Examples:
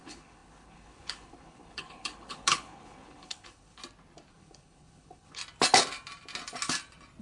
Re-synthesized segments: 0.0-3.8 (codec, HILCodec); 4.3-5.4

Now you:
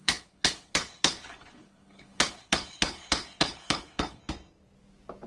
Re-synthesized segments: 0.0-4.2 (codec, HILCodec)

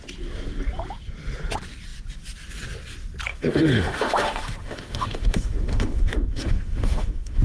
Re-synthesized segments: 3.3-7.4 (autoencoder, DAC-VAE)

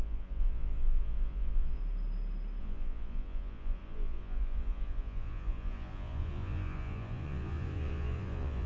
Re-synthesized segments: 0.0-1.8 (vocoder, Vocos); 2.6-8.7